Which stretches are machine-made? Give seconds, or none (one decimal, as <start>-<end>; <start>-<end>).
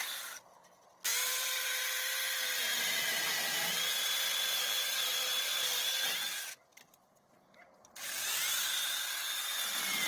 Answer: 1.1-3.3; 8.5-10.1